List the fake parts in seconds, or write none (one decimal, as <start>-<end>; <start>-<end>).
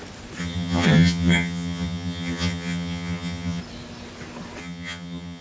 0.4-3.6; 4.6-5.4